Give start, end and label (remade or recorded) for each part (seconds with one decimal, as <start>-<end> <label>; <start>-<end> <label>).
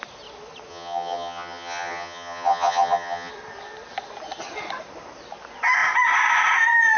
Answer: 0.0-0.7 recorded; 0.7-3.3 remade; 3.3-7.0 recorded